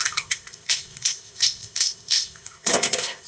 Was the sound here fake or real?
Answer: fake